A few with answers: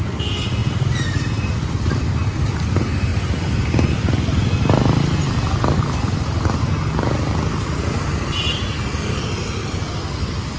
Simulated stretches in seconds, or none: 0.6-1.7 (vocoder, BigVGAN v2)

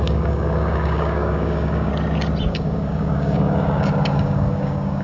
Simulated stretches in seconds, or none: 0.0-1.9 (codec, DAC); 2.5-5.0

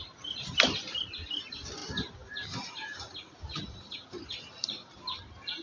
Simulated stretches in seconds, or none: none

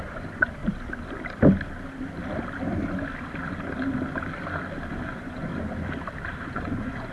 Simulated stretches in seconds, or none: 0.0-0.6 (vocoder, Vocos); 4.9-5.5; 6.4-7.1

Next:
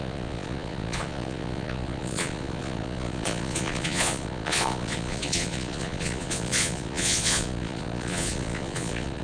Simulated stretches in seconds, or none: 0.0-9.2 (vocoder, Vocos)